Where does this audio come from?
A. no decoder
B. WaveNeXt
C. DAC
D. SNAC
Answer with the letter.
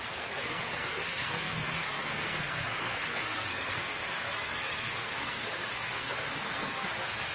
D